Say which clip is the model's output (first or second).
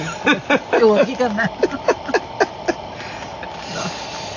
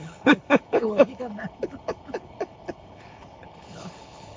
second